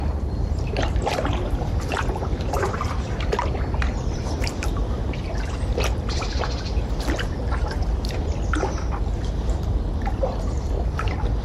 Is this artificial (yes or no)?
yes